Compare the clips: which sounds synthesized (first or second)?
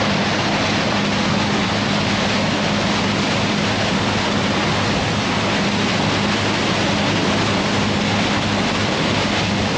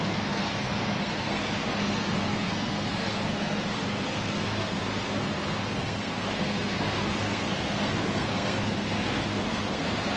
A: second